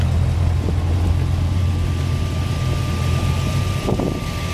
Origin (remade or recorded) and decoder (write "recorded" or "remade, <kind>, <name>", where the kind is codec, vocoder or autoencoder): recorded